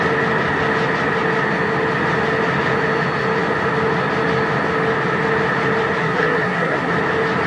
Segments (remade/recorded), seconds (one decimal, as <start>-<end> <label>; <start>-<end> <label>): 0.0-6.0 recorded; 6.0-6.9 remade; 6.9-7.5 recorded